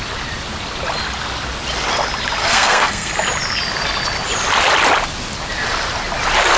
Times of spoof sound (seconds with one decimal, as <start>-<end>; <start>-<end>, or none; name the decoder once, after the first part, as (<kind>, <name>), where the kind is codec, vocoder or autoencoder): 2.4-3.1 (codec, SNAC)